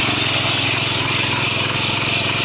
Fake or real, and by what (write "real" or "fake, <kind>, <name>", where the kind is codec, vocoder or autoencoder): real